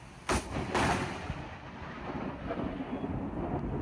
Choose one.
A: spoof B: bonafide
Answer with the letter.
B